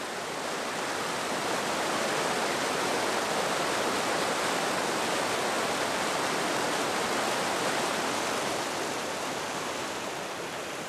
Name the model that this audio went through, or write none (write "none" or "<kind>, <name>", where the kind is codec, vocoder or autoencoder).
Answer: none